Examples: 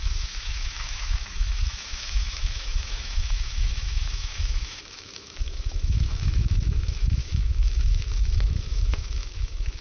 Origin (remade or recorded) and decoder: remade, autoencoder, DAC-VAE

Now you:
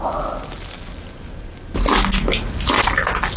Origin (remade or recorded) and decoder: recorded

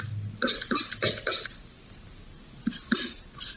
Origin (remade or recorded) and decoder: recorded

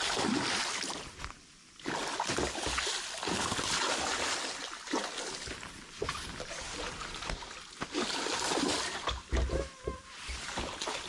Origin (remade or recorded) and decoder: recorded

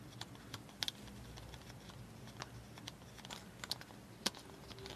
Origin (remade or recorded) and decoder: recorded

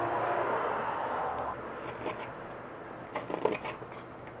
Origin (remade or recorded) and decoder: recorded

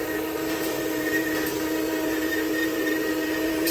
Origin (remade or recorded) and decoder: remade, vocoder, BigVGAN v2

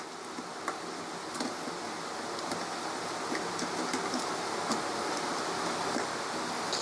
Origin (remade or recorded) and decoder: recorded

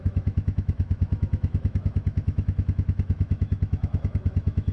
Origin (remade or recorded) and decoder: remade, autoencoder, DAC-VAE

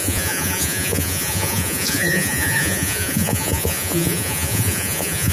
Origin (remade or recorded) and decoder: remade, vocoder, Vocos